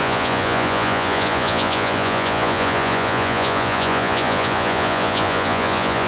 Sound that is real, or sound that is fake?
fake